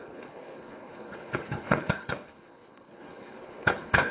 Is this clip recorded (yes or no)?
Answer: no